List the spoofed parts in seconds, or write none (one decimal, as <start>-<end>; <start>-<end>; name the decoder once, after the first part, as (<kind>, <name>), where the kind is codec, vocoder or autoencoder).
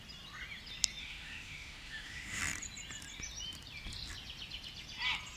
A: 1.0-2.4 (autoencoder, DAC-VAE)